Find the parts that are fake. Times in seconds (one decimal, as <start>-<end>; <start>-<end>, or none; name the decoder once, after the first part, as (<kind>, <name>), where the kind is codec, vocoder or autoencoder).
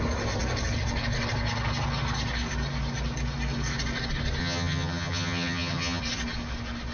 4.4-6.0 (vocoder, HiFi-GAN)